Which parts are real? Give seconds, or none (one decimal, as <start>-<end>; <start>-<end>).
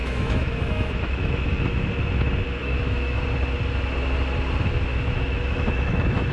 1.9-2.6; 3.2-4.9